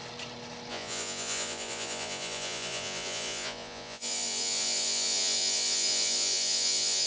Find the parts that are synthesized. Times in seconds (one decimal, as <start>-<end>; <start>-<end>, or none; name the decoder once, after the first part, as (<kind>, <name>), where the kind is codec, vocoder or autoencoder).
0.7-7.1 (vocoder, Vocos)

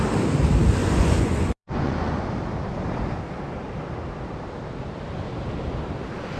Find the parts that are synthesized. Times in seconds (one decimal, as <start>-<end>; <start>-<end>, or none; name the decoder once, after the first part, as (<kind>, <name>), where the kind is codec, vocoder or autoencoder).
0.8-2.2 (vocoder, Vocos)

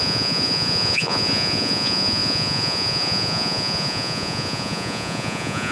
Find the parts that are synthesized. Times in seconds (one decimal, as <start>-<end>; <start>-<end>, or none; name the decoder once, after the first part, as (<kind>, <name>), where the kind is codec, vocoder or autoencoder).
0.0-5.7 (vocoder, Vocos)

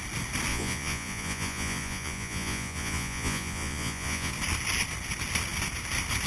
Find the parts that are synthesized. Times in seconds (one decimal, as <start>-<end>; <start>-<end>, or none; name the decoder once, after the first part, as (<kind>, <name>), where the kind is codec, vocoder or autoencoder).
0.5-4.3 (vocoder, Vocos)

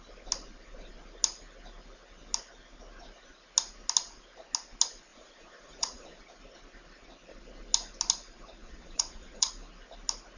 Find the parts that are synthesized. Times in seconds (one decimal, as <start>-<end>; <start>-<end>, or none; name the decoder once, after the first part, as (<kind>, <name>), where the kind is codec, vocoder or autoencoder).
5.1-6.2 (vocoder, Vocos); 8.6-9.5

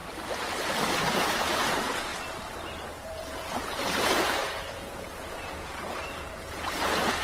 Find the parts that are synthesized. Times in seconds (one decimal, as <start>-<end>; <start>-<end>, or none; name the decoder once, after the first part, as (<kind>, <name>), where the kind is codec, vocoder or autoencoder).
1.1-2.1 (vocoder, Vocos); 3.0-7.2